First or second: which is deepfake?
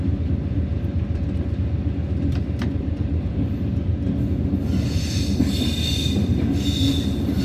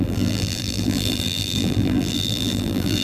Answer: second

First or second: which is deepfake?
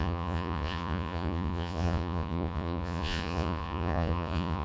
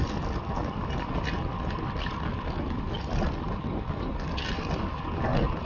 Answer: first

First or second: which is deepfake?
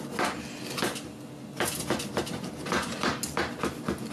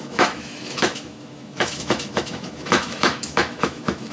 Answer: second